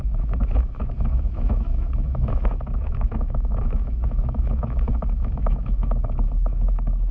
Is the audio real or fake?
fake